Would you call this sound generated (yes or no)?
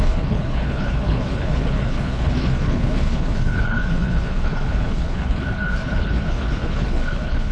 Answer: yes